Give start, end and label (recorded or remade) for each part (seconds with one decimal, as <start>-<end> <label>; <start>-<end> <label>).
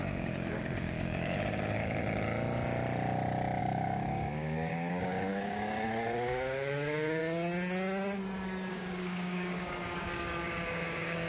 0.0-2.0 remade; 2.0-3.6 recorded; 3.6-7.2 remade; 7.2-8.7 recorded; 8.7-11.3 remade